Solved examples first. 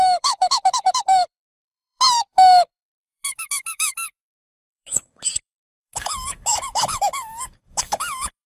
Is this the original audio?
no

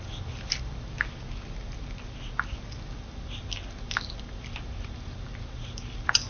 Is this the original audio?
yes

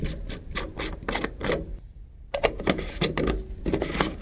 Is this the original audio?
yes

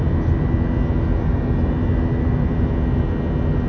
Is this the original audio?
yes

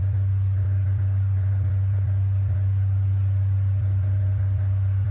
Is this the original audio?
yes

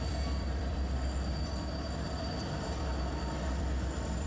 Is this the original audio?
no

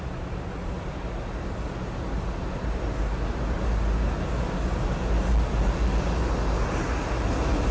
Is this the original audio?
yes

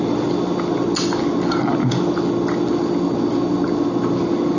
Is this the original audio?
yes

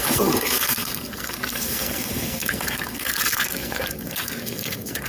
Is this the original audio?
no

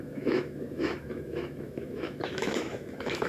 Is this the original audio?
no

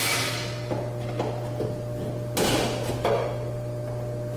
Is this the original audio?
yes